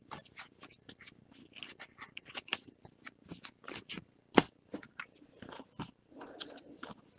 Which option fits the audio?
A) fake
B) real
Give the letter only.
B